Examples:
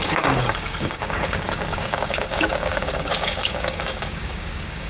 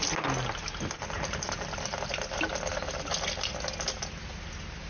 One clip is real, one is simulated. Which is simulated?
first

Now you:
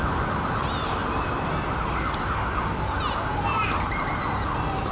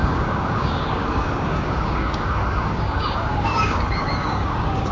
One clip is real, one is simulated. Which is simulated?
second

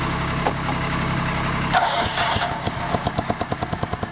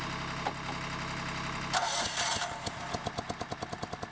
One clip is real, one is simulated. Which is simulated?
first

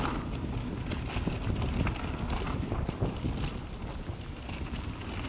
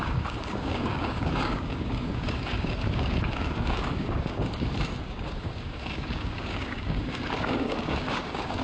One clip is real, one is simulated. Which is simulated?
second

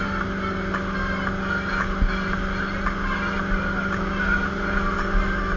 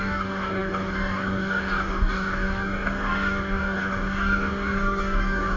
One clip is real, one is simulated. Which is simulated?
second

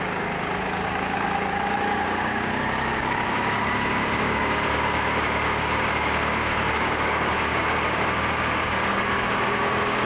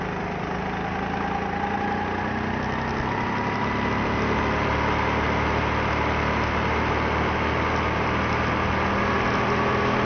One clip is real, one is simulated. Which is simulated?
first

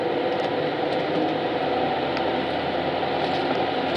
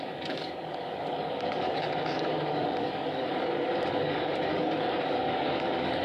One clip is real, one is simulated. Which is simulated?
second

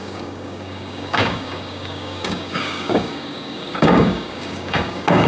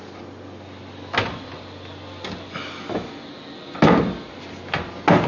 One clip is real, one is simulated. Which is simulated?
first